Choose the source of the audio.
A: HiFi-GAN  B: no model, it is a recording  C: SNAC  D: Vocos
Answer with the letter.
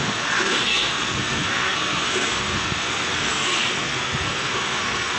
C